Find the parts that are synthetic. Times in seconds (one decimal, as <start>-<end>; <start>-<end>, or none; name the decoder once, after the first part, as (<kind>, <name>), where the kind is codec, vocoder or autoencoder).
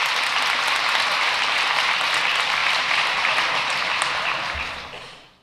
2.6-3.3 (vocoder, BigVGAN v2)